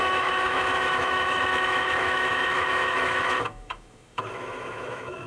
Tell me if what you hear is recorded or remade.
remade